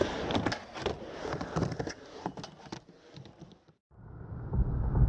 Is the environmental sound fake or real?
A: real